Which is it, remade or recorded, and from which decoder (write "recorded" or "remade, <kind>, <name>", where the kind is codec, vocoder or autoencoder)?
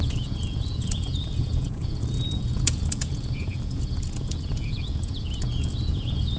remade, vocoder, Vocos